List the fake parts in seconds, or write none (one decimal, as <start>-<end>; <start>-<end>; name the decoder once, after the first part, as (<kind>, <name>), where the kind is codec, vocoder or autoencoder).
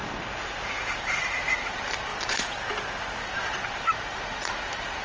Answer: 0.7-2.1 (vocoder, BigVGAN v2); 3.2-5.0